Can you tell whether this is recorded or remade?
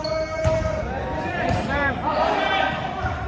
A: remade